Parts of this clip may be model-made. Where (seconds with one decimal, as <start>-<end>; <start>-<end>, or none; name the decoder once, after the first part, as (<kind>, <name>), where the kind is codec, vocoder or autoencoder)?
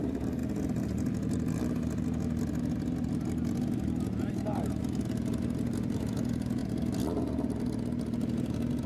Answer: none